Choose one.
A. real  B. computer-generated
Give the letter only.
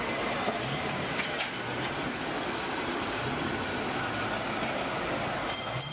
A